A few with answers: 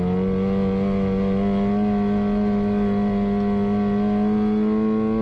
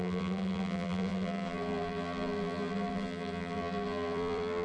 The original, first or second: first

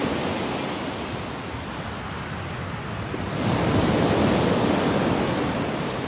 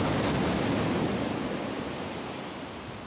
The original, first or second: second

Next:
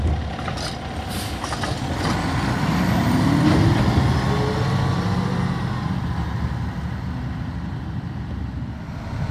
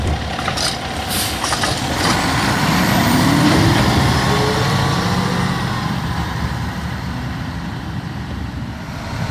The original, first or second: first